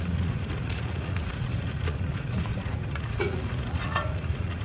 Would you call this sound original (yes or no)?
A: no